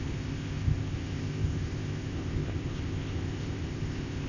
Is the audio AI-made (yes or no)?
yes